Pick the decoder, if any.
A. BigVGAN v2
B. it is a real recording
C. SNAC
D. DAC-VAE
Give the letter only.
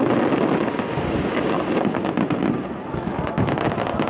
B